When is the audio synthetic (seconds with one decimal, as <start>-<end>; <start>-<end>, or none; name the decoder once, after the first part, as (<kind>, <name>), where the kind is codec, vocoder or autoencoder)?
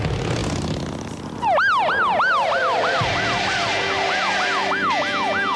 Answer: none